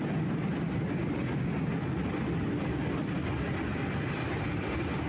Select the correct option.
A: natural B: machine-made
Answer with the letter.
A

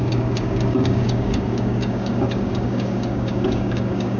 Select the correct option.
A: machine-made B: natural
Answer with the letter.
A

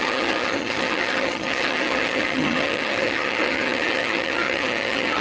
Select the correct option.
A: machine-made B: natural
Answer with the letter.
A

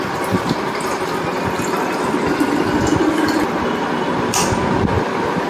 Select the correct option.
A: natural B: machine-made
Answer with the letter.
B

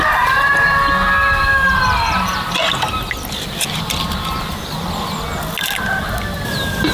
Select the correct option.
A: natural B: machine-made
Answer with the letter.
A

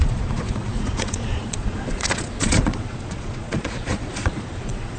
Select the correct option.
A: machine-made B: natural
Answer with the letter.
A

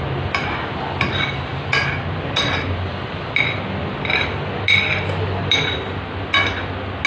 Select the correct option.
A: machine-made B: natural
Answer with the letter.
B